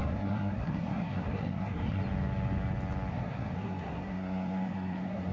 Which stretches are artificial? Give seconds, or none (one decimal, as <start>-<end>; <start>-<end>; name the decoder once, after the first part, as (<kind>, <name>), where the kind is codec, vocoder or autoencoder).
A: 0.0-2.0 (codec, SNAC); 3.1-5.3